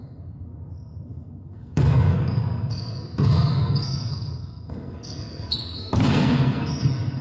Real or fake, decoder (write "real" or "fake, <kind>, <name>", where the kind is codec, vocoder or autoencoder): fake, codec, SNAC